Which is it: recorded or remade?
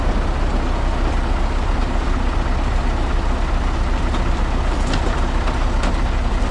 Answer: recorded